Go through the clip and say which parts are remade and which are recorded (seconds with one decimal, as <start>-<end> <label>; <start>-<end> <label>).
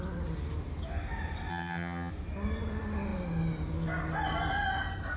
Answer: 0.0-1.5 recorded; 1.5-2.1 remade; 2.1-5.2 recorded